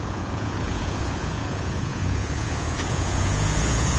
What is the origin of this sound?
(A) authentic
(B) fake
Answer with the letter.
B